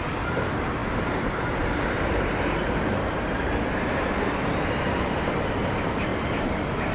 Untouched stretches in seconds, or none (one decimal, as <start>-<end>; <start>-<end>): none